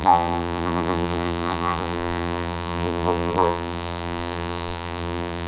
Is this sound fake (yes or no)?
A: yes